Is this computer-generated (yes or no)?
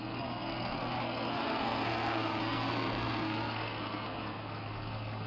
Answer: yes